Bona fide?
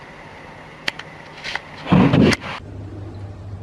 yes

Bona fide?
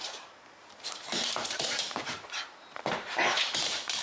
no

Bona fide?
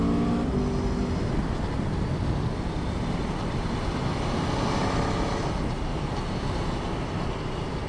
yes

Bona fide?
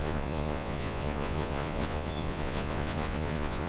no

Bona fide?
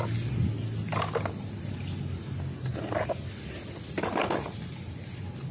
yes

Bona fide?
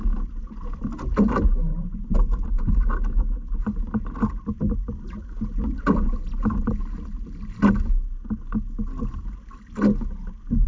yes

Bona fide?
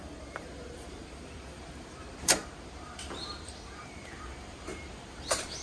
no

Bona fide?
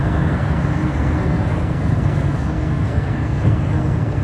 no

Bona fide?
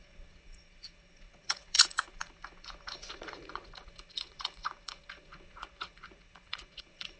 no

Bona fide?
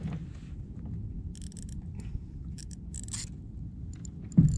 yes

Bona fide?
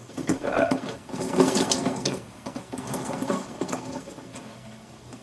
no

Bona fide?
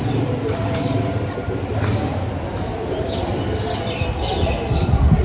no